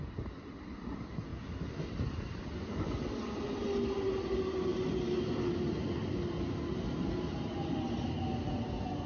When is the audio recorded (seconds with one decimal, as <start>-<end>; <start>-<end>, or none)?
0.0-9.1